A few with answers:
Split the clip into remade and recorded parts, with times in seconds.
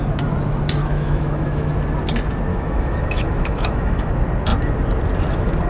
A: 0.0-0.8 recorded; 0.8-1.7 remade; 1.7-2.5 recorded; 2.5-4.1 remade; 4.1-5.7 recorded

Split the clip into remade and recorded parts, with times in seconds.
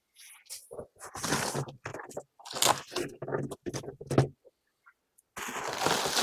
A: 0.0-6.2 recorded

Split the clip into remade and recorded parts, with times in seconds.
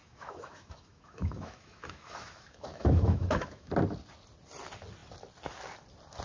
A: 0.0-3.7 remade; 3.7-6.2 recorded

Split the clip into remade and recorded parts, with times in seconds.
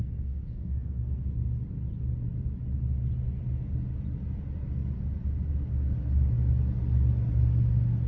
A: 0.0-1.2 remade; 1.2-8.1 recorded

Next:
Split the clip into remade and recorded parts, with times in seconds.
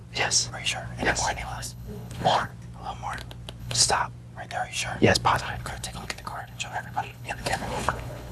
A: 0.0-1.1 recorded; 1.1-2.5 remade; 2.5-3.6 recorded; 3.6-4.0 remade; 4.0-5.4 recorded; 5.4-8.3 remade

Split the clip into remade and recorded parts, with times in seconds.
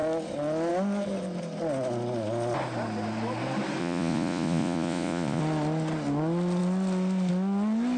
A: 0.0-3.8 recorded; 3.8-5.4 remade; 5.4-8.0 recorded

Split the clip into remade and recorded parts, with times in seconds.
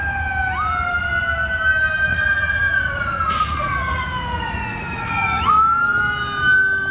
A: 0.0-2.1 recorded; 2.1-5.5 remade; 5.5-6.9 recorded